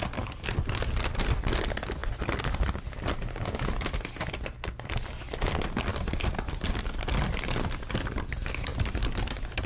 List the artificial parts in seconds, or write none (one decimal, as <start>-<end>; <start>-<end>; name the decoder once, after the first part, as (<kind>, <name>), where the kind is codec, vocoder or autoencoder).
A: 5.9-7.9 (vocoder, BigVGAN v2); 8.7-9.2